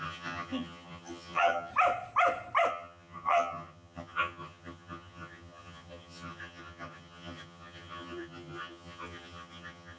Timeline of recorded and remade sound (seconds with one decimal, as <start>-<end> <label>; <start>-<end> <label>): 0.0-1.7 remade; 1.7-2.7 recorded; 2.7-10.0 remade